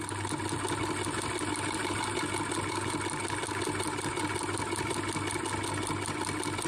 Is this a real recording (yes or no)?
yes